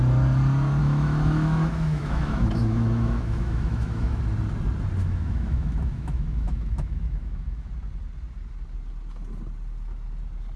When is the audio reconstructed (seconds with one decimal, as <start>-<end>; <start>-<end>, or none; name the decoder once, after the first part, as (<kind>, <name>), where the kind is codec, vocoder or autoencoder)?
0.8-4.2 (autoencoder, DAC-VAE); 5.0-7.7